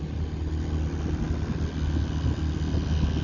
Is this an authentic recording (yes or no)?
yes